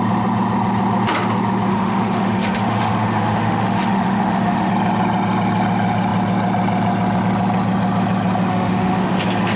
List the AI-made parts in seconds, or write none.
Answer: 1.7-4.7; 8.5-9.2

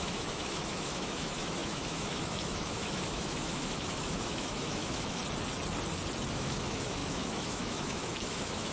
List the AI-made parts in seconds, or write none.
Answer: 0.0-5.2; 6.3-8.7

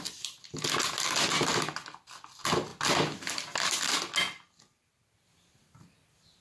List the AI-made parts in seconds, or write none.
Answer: none

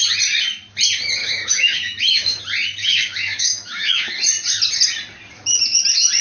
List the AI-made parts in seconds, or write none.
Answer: 1.2-2.4; 2.8-4.1

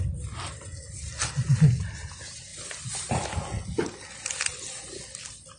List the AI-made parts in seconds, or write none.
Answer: none